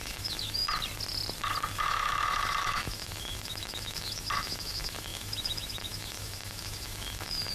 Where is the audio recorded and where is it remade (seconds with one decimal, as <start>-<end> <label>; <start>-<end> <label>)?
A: 0.0-0.6 remade; 0.6-1.8 recorded; 1.8-7.5 remade